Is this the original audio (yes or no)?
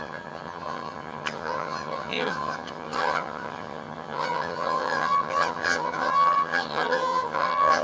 no